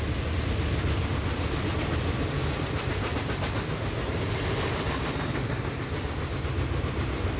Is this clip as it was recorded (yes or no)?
yes